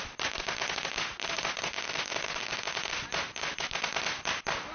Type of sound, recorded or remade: recorded